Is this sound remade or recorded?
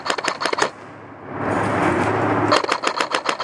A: recorded